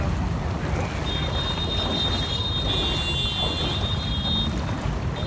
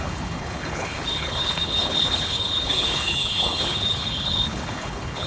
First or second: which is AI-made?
second